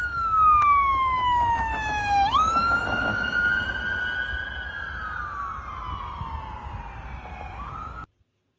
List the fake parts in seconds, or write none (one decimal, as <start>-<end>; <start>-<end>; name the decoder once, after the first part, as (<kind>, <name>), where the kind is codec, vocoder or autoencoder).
0.0-3.1 (autoencoder, DAC-VAE); 8.2-8.6